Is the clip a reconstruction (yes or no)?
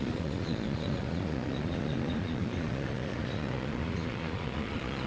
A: yes